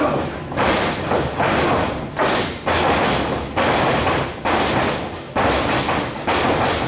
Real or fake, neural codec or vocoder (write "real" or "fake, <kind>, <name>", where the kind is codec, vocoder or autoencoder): real